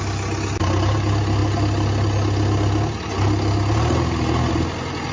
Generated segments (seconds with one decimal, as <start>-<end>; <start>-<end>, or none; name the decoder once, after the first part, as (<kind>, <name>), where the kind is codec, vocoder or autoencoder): none

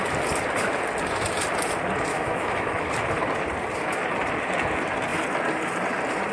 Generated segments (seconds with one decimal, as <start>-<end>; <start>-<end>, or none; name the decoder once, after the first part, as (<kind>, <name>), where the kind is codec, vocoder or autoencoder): 2.1-2.9 (autoencoder, DAC-VAE)